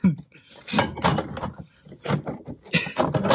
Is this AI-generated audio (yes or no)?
no